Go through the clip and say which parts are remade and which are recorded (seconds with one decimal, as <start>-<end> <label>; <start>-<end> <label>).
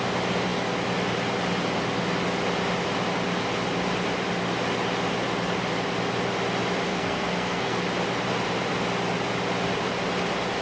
0.0-6.9 recorded; 6.9-7.8 remade; 7.8-10.6 recorded